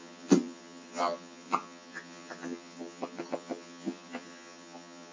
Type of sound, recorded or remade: remade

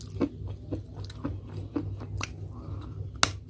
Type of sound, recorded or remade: recorded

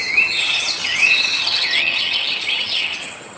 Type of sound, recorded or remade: remade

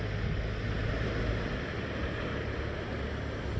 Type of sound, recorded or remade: recorded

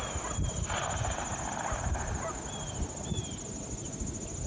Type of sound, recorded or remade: recorded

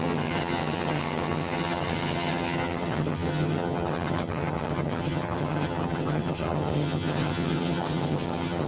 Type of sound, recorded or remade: remade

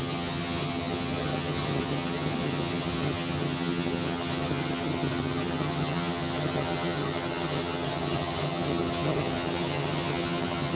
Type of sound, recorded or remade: remade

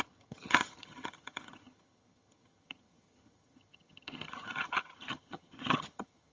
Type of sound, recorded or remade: remade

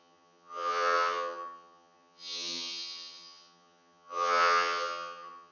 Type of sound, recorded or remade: remade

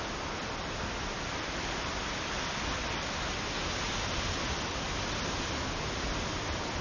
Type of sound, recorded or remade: recorded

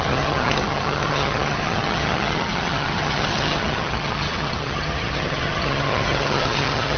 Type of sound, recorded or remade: remade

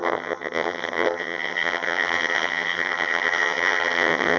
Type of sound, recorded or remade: remade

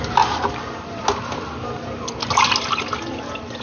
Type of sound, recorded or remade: recorded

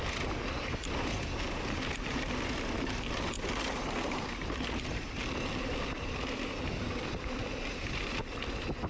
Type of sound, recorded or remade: recorded